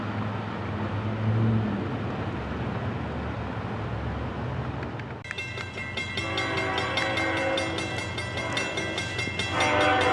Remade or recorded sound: recorded